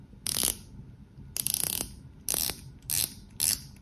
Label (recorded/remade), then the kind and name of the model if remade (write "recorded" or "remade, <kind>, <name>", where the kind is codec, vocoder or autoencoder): recorded